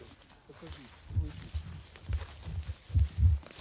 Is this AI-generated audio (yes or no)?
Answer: no